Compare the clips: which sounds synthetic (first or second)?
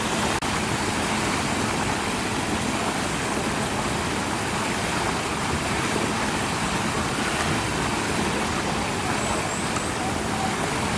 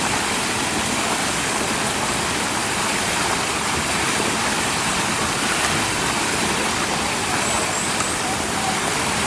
second